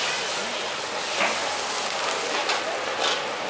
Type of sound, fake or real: real